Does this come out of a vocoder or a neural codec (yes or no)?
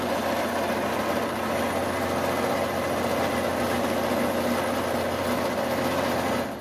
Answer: no